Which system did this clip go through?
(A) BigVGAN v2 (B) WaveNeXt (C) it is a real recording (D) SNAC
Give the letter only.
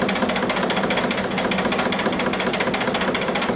C